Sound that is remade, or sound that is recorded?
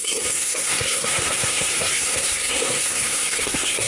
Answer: remade